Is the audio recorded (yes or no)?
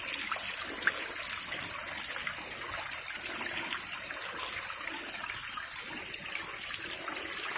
yes